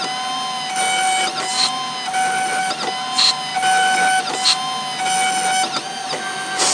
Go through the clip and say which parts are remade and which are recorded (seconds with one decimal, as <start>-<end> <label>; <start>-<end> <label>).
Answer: 0.0-6.7 recorded